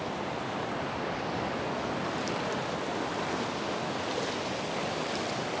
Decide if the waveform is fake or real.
real